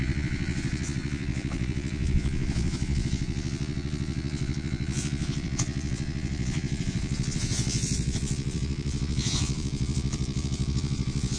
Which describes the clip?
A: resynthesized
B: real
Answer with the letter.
A